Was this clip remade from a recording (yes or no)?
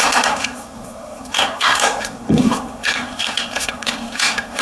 yes